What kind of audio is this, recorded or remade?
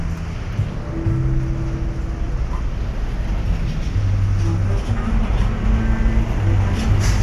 recorded